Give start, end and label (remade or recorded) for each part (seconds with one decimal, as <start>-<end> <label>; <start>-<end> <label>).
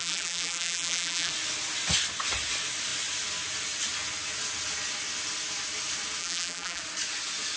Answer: 0.0-1.3 remade; 1.3-6.2 recorded; 6.2-6.8 remade; 6.8-7.6 recorded